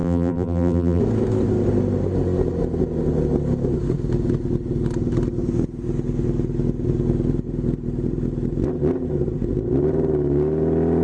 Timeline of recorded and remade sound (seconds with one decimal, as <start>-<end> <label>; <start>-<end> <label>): 0.0-1.0 remade; 1.0-11.0 recorded